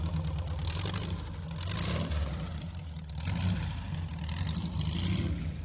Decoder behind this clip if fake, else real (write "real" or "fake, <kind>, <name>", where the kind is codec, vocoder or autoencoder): real